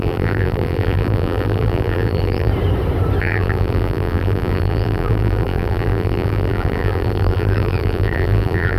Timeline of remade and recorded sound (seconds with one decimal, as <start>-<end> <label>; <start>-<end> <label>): 0.0-2.5 remade; 2.5-3.2 recorded; 3.2-8.8 remade